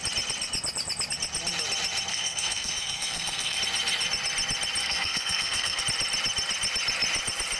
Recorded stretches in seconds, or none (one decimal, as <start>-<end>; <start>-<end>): 0.0-2.1; 3.6-4.8; 5.8-7.6